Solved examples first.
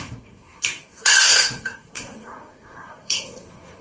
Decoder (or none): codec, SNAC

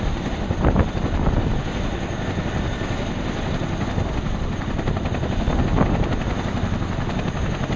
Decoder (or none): none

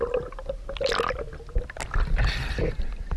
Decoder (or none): none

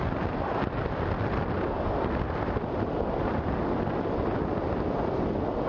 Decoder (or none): none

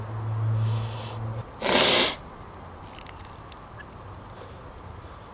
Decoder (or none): none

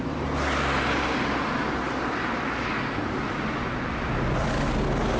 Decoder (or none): none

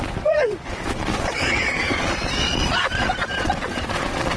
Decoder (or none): vocoder, Vocos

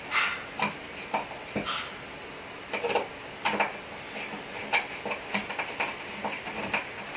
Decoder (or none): none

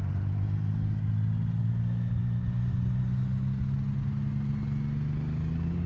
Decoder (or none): none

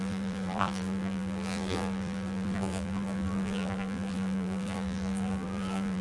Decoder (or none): vocoder, BigVGAN v2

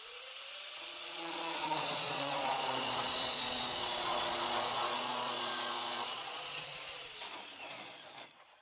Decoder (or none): vocoder, Vocos